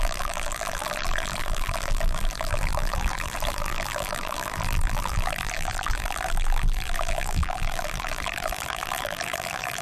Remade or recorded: remade